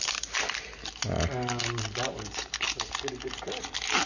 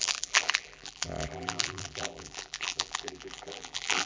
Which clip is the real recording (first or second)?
first